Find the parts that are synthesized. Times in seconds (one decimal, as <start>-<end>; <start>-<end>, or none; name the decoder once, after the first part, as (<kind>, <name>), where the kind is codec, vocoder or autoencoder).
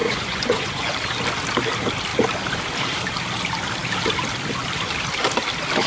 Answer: 0.0-0.9 (vocoder, Vocos)